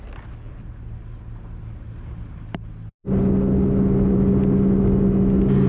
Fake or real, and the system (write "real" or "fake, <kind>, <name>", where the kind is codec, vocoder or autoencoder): real